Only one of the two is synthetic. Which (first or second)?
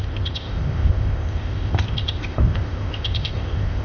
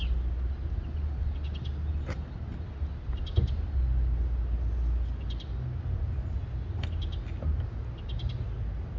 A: first